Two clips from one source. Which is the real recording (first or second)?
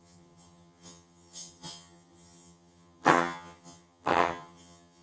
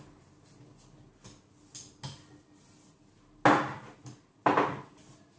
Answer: second